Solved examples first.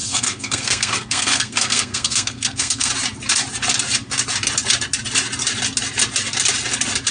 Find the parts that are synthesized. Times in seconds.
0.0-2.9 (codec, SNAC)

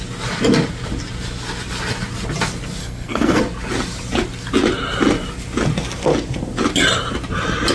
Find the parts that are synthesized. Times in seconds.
2.8-3.4 (codec, SNAC)

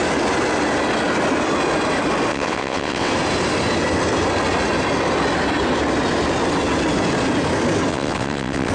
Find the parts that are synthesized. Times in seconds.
2.3-3.1 (vocoder, WaveNeXt); 7.9-8.7

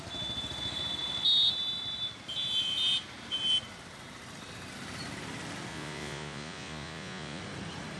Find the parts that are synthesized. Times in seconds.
5.7-7.4 (vocoder, Vocos)

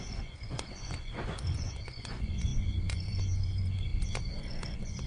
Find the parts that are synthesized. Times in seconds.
0.0-5.1 (vocoder, Vocos)